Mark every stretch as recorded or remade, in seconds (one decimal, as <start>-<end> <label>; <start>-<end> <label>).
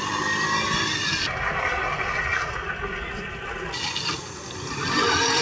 0.0-2.3 recorded; 2.3-4.6 remade; 4.6-5.4 recorded